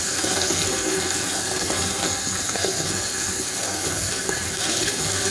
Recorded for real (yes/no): no